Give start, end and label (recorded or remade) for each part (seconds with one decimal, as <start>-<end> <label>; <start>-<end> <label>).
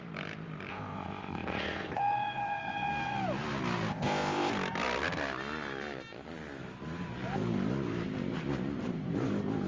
0.0-0.7 recorded; 0.7-2.0 remade; 2.0-3.9 recorded; 3.9-4.5 remade; 4.5-9.7 recorded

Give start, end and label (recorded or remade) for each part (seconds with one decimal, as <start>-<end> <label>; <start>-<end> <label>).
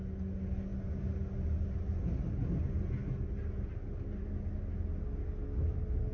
0.0-6.1 recorded